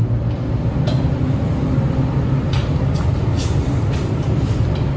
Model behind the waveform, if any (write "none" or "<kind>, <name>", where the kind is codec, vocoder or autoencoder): none